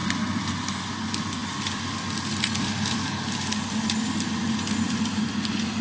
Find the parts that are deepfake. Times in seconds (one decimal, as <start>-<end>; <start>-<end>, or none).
none